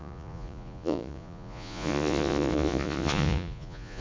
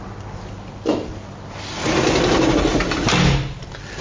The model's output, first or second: first